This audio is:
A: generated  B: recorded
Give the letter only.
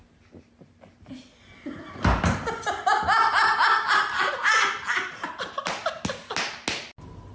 B